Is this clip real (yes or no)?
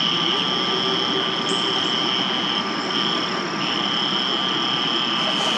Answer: yes